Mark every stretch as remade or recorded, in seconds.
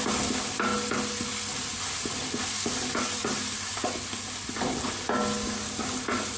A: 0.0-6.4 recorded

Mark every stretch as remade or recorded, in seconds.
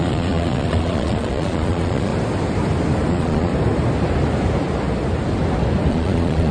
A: 0.0-2.1 remade; 2.1-3.1 recorded; 3.1-3.5 remade; 3.5-5.9 recorded; 5.9-6.5 remade